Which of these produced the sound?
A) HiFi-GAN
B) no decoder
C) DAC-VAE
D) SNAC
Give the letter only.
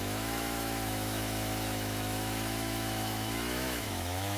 C